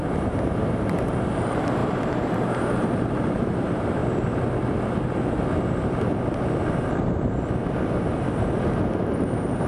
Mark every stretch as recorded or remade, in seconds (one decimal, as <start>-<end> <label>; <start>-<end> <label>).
0.0-4.0 remade; 4.0-9.0 recorded; 9.0-9.7 remade